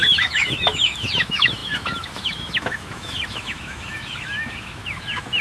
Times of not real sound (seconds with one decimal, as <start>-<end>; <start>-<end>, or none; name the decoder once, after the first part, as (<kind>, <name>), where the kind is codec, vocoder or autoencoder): 0.0-5.4 (autoencoder, DAC-VAE)